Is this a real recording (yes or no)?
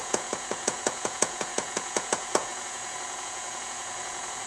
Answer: no